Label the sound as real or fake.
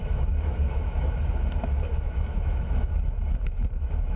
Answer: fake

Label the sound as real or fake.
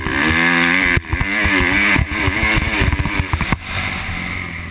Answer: real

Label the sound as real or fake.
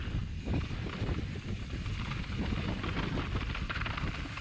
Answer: real